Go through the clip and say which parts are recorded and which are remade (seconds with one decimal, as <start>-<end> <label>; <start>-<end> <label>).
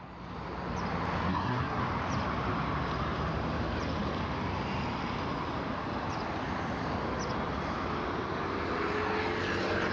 0.0-1.3 recorded; 1.3-1.8 remade; 1.8-9.9 recorded